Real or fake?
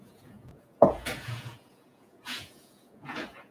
fake